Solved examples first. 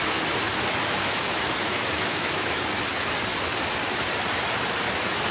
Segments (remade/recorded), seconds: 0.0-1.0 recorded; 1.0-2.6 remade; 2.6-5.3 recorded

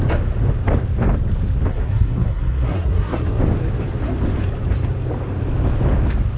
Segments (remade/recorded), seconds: 0.0-1.7 recorded; 1.7-3.4 remade; 3.4-6.4 recorded